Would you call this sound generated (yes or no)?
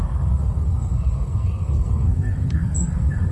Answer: yes